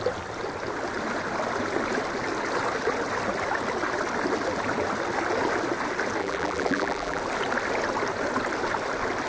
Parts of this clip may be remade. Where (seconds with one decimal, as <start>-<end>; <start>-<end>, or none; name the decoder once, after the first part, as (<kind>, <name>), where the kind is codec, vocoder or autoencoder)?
6.2-7.2 (vocoder, BigVGAN v2)